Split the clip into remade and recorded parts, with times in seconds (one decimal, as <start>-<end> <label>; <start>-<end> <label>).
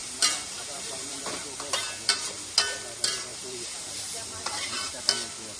0.0-1.2 remade; 1.2-3.3 recorded; 3.3-5.0 remade; 5.0-5.6 recorded